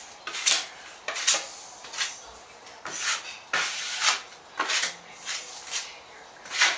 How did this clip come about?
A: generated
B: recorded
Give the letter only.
B